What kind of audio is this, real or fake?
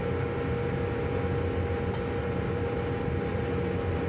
real